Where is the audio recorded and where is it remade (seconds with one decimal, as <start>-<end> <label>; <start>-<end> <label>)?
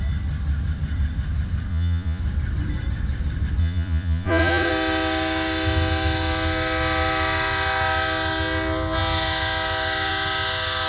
0.0-1.7 recorded; 1.7-2.2 remade; 2.2-3.6 recorded; 3.6-4.7 remade; 4.7-10.9 recorded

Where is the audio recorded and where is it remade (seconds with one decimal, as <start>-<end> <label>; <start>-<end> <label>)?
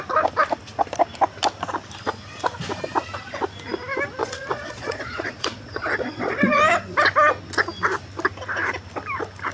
0.0-4.2 recorded; 4.2-6.6 remade; 6.6-9.5 recorded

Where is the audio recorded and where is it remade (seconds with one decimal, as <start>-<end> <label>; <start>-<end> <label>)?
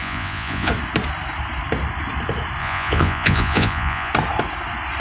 0.0-0.7 remade; 0.7-2.6 recorded; 2.6-4.1 remade; 4.1-5.0 recorded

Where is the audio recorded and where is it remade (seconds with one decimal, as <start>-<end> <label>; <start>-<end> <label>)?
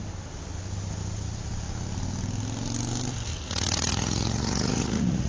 0.0-3.3 recorded; 3.3-5.3 remade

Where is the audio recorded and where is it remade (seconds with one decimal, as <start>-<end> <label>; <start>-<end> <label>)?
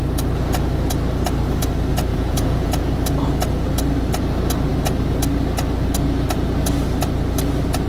0.0-2.1 recorded; 2.1-2.8 remade; 2.8-7.9 recorded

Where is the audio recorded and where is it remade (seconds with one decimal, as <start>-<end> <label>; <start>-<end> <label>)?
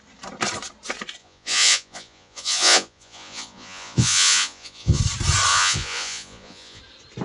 0.0-1.2 recorded; 1.2-5.0 remade; 5.0-5.5 recorded; 5.5-6.8 remade; 6.8-7.2 recorded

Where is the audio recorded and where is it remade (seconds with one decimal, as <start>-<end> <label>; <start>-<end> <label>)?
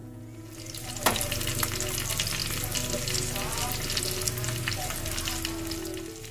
0.0-0.5 remade; 0.5-6.3 recorded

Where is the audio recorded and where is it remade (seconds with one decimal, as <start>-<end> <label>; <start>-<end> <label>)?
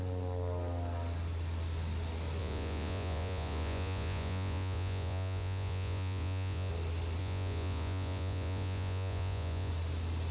0.0-2.4 recorded; 2.4-6.7 remade; 6.7-7.2 recorded; 7.2-9.7 remade; 9.7-10.3 recorded